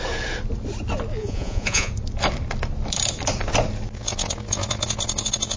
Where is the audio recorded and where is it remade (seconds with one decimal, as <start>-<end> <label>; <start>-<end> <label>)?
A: 0.0-1.2 recorded; 1.2-1.9 remade; 1.9-5.6 recorded